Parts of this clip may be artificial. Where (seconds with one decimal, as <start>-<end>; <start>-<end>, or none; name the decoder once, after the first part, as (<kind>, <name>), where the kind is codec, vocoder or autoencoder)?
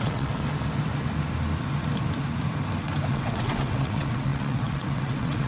0.0-0.4 (vocoder, WaveNeXt); 3.1-5.5